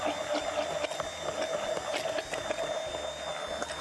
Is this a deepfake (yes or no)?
no